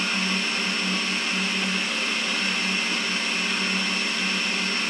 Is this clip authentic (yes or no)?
yes